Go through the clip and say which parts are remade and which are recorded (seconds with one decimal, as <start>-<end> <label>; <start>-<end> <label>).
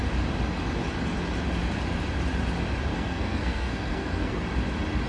0.0-2.9 recorded; 2.9-4.4 remade; 4.4-5.1 recorded